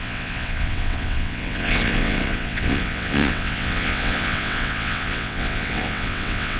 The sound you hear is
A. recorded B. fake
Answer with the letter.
B